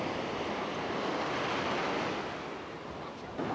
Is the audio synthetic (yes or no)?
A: no